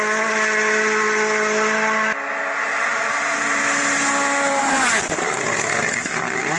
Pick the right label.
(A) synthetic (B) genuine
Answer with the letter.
B